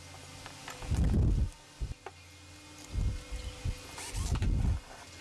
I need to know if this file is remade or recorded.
recorded